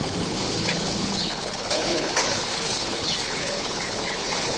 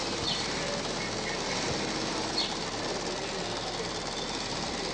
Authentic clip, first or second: second